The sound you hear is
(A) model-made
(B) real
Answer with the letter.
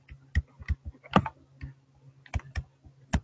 B